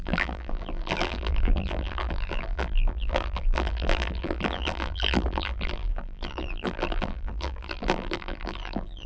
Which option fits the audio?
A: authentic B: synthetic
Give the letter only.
B